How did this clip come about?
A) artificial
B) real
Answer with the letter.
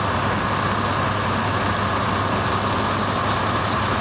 B